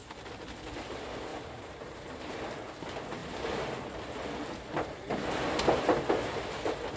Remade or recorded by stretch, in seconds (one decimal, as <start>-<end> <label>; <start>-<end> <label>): 0.0-1.3 recorded; 1.3-2.3 remade; 2.3-7.0 recorded